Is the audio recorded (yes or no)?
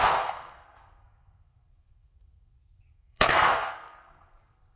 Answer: no